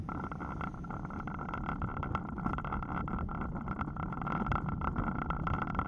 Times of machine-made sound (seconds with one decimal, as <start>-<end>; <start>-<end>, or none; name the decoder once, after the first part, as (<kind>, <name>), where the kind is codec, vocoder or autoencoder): none